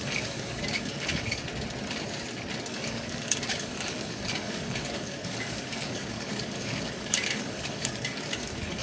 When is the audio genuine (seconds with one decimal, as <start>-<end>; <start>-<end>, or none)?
1.4-2.7